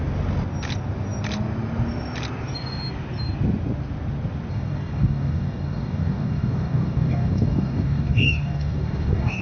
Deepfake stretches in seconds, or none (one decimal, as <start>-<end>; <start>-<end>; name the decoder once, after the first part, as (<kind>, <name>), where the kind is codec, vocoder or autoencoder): 4.5-9.4 (codec, DAC)